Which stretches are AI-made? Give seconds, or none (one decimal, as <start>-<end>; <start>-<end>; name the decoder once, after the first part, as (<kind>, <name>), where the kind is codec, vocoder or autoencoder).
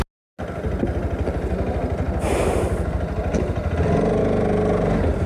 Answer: none